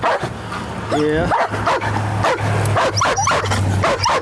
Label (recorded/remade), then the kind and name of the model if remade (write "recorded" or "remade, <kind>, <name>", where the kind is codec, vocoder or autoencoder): recorded